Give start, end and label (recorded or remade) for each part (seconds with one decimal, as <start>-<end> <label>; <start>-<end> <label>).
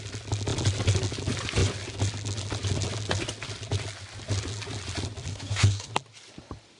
0.0-5.3 recorded; 5.3-5.9 remade; 5.9-6.8 recorded